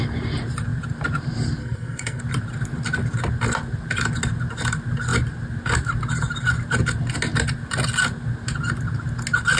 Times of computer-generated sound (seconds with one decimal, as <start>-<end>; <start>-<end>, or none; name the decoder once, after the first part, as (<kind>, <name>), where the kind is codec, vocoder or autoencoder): 1.6-2.2 (codec, SNAC)